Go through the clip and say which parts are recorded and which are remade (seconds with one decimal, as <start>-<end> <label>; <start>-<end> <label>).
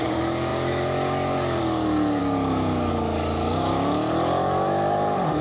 0.0-5.4 remade